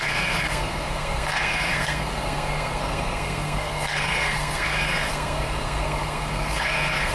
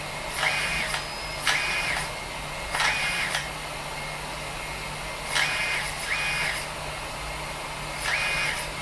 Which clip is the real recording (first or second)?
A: second